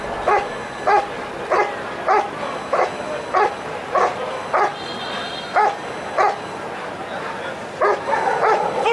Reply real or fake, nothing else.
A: real